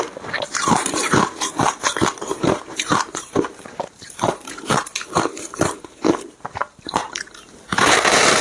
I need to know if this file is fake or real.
fake